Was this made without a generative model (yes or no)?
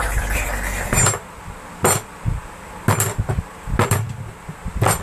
yes